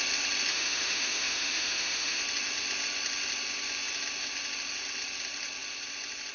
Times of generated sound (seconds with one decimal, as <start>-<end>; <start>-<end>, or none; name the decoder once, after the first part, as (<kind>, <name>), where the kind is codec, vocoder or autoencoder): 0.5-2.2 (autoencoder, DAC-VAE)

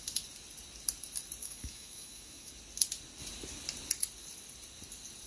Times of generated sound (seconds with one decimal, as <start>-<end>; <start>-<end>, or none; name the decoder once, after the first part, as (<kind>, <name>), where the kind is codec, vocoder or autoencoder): 1.4-2.5 (autoencoder, DAC-VAE)

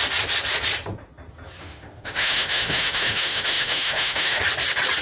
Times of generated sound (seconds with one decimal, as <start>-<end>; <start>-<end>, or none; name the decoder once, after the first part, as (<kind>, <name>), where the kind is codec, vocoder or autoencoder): 1.6-4.4 (autoencoder, DAC-VAE)

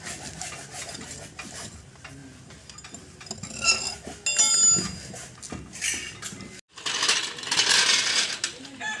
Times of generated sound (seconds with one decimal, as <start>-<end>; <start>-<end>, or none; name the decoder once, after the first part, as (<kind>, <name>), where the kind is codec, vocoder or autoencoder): none

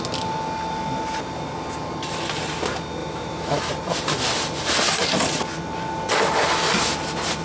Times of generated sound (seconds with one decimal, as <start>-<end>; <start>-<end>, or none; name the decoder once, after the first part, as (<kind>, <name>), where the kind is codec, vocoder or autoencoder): 3.0-3.7 (autoencoder, DAC-VAE)

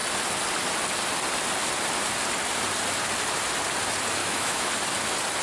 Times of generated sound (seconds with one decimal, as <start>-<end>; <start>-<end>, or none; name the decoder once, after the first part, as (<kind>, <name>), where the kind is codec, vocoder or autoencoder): 4.2-4.7 (autoencoder, DAC-VAE)